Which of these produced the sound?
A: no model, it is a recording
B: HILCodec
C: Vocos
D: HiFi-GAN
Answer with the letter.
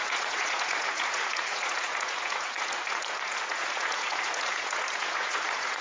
C